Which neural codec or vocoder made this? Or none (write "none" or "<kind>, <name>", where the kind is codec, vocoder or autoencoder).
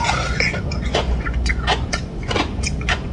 vocoder, Vocos